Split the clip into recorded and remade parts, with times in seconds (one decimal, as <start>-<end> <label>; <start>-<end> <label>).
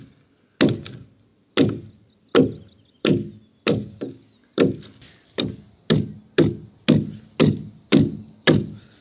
0.0-9.0 recorded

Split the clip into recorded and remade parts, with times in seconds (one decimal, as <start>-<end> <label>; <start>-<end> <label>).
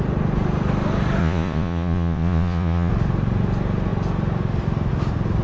0.0-1.2 recorded; 1.2-2.9 remade; 2.9-5.4 recorded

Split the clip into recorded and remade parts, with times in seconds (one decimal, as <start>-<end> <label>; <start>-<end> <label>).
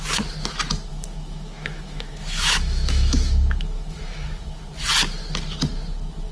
0.0-0.9 recorded; 0.9-4.6 remade; 4.6-6.3 recorded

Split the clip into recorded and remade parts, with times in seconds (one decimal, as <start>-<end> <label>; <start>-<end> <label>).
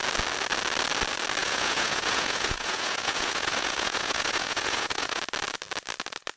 0.0-1.4 recorded; 1.4-5.2 remade; 5.2-6.4 recorded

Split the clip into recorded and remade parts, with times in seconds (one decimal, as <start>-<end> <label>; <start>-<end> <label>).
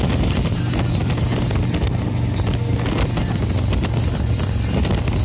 0.0-5.2 recorded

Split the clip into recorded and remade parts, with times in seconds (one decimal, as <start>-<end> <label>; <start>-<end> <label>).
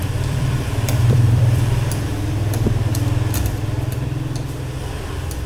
0.0-2.9 remade; 2.9-3.4 recorded; 3.4-5.5 remade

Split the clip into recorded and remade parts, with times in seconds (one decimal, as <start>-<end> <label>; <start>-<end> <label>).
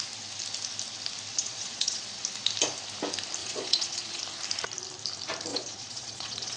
0.0-1.3 recorded; 1.3-2.2 remade; 2.2-3.4 recorded; 3.4-4.2 remade; 4.2-5.5 recorded; 5.5-6.6 remade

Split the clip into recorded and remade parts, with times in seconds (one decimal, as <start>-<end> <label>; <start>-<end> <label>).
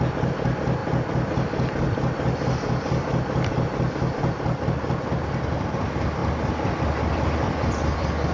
0.0-6.2 remade; 6.2-6.8 recorded; 6.8-8.3 remade